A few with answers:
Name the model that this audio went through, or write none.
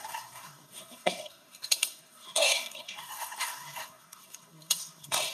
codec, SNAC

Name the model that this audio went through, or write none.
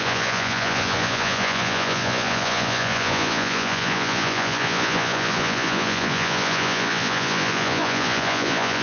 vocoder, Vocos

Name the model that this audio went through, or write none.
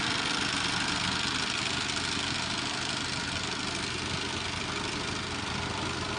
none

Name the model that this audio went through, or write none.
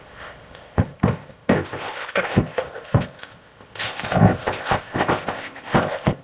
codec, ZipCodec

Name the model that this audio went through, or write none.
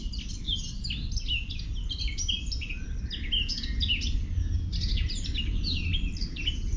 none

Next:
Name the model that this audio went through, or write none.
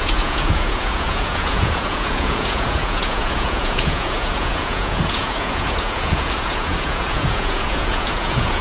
vocoder, Vocos